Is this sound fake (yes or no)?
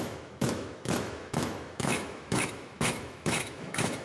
yes